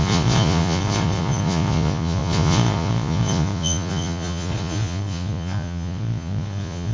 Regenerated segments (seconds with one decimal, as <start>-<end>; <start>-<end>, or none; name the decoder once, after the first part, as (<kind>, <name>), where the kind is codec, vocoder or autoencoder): 0.0-6.9 (vocoder, Vocos)